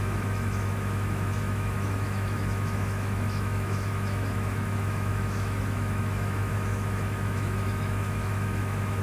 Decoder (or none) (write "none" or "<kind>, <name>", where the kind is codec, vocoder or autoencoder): autoencoder, DAC-VAE